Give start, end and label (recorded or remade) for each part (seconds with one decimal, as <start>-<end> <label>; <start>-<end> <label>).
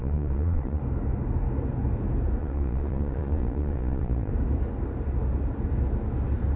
0.0-0.8 remade; 0.8-2.4 recorded; 2.4-4.3 remade; 4.3-6.6 recorded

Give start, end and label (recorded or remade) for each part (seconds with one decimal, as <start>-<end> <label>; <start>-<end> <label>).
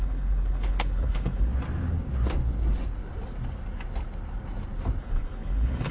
0.0-1.5 remade; 1.5-5.0 recorded; 5.0-5.9 remade